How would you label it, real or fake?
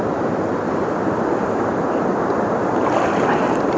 real